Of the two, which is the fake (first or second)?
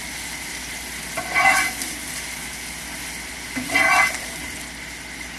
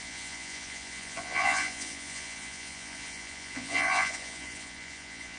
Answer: second